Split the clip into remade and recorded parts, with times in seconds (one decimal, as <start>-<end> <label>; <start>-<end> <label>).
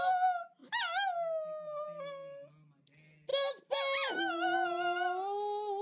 0.0-5.8 recorded